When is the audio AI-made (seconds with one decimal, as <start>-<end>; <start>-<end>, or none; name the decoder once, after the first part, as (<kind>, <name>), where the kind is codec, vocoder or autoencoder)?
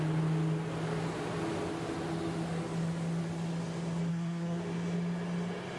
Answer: 4.1-4.6 (codec, SNAC)